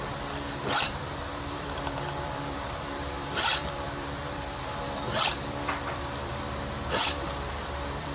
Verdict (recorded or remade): remade